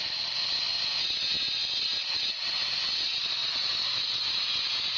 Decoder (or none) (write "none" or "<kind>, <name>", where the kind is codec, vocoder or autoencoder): none